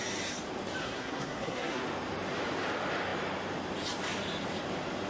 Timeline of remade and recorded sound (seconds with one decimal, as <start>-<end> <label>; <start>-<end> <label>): 0.0-0.8 recorded; 0.8-1.8 remade; 1.8-5.1 recorded